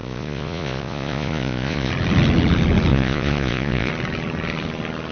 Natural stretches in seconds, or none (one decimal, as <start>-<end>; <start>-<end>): 1.9-2.9; 3.9-5.1